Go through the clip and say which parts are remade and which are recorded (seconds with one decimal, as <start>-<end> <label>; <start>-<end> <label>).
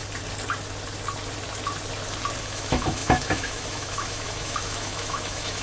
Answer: 0.0-2.4 recorded; 2.4-5.6 remade